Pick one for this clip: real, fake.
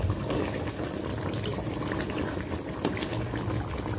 real